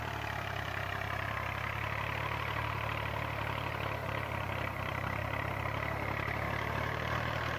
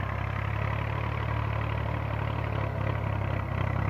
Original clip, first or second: second